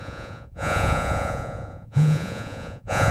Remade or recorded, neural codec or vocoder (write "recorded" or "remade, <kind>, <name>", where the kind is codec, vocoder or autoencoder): remade, vocoder, Vocos